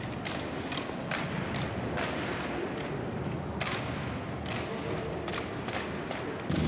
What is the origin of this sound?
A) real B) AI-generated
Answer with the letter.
A